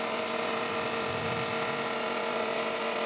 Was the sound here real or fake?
real